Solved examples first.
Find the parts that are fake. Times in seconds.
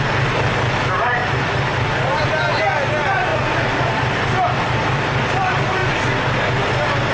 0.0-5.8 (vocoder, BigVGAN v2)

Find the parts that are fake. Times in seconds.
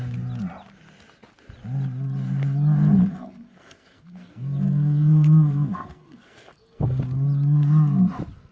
3.1-7.0 (codec, SNAC)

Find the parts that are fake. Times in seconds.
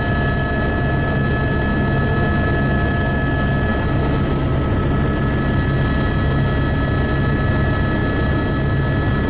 none